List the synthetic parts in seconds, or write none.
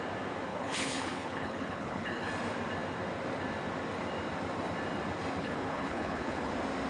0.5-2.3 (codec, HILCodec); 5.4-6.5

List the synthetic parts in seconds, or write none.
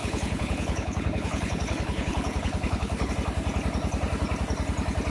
0.0-3.1 (codec, HILCodec)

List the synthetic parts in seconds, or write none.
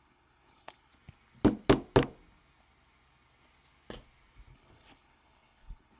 0.0-0.9 (codec, HILCodec); 4.5-6.0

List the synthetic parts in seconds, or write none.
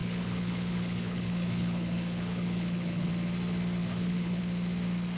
0.0-3.1 (codec, HILCodec); 3.8-4.4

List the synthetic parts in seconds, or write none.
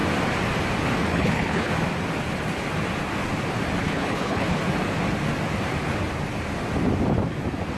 1.1-1.7 (codec, HILCodec); 3.8-4.6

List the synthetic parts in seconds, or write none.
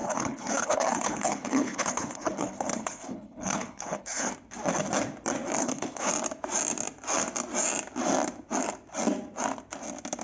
0.0-4.3 (codec, HILCodec); 5.6-6.1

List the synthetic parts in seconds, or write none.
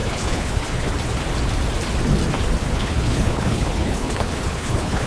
0.0-0.9 (codec, HILCodec); 2.6-5.1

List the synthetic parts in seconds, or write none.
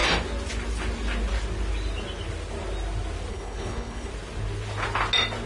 3.3-4.1 (codec, HILCodec)